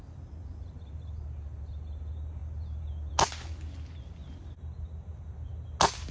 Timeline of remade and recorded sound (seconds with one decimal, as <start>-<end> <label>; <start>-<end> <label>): 0.0-6.1 recorded